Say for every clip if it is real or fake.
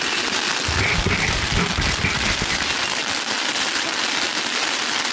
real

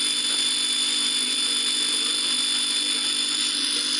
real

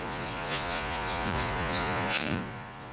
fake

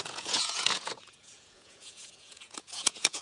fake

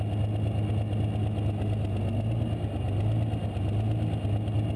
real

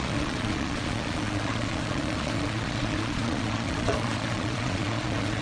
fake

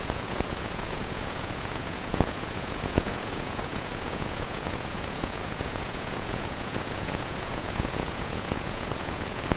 fake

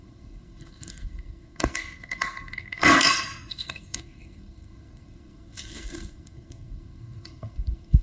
fake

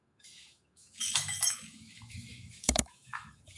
fake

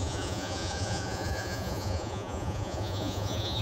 fake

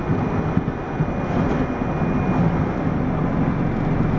real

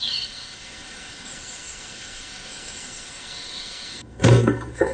fake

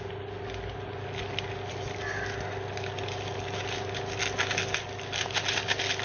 real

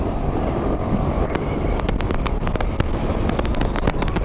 fake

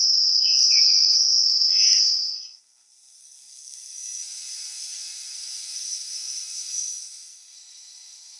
fake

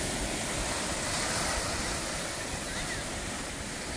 real